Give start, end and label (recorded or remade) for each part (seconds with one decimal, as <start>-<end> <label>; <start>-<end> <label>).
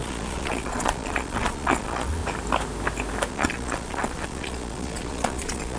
0.0-2.2 remade; 2.2-3.3 recorded; 3.3-5.8 remade